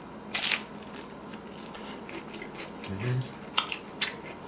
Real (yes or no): yes